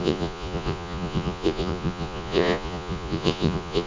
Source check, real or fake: fake